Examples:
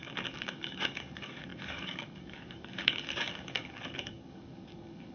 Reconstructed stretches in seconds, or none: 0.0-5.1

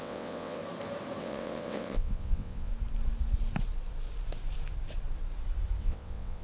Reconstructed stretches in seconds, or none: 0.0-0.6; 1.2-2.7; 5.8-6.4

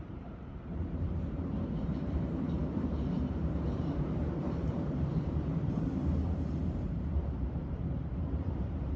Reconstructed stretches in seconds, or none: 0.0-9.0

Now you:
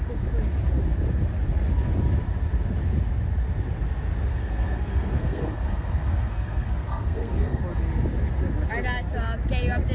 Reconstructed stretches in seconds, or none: 4.3-7.6

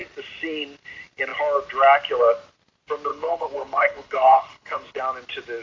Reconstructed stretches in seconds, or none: 3.1-5.0